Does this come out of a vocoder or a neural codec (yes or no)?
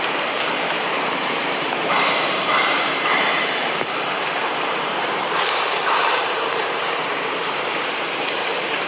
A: yes